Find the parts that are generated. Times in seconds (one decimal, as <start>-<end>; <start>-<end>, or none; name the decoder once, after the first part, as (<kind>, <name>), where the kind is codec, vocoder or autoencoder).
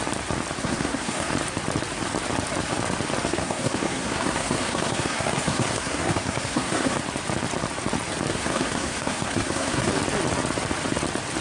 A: 0.6-1.3 (codec, SNAC); 3.3-7.0; 8.3-9.9